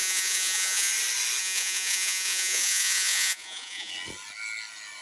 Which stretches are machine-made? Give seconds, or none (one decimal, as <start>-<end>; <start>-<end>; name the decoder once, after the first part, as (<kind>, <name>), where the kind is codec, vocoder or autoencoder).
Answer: 0.0-0.9 (vocoder, Vocos); 1.4-3.9